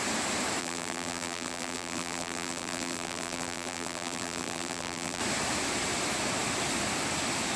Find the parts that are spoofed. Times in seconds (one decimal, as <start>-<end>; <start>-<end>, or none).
0.6-5.2